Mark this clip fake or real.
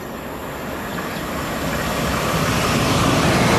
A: real